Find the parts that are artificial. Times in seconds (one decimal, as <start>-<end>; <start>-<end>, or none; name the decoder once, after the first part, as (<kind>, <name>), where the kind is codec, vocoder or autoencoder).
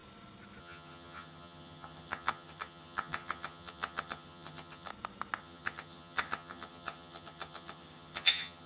0.6-4.9 (vocoder, HiFi-GAN); 5.4-8.7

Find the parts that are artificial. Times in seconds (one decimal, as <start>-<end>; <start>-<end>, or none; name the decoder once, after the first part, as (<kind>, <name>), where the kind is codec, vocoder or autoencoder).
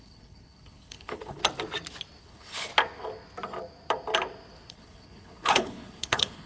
0.0-1.4 (codec, HILCodec); 2.2-2.7; 4.7-6.5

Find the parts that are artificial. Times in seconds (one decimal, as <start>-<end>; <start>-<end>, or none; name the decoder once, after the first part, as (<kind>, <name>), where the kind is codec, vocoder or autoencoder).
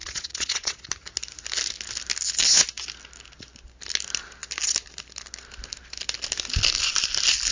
0.0-0.9 (vocoder, Vocos)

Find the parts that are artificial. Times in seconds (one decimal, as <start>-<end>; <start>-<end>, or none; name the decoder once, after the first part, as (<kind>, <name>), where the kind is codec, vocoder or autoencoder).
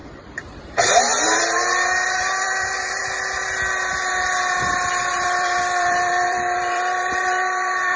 0.0-3.0 (vocoder, BigVGAN v2); 5.0-8.0